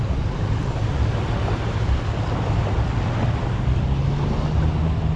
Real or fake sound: real